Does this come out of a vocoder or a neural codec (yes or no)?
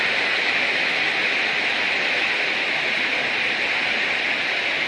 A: no